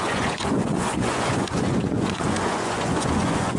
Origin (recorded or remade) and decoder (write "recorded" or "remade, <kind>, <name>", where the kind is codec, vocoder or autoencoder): remade, vocoder, Vocos